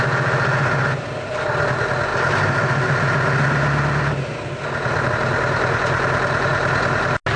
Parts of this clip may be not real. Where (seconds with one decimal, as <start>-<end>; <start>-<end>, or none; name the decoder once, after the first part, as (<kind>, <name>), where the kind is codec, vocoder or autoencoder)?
none